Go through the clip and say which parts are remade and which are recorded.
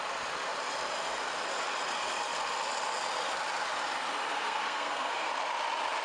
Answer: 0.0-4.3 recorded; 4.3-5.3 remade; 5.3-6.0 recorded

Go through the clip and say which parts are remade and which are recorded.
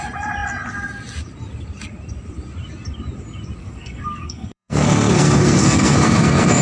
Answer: 0.0-3.6 recorded; 3.6-6.6 remade